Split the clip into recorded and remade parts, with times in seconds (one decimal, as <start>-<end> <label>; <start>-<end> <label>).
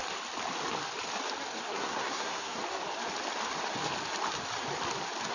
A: 0.0-1.6 recorded; 1.6-2.6 remade; 2.6-5.3 recorded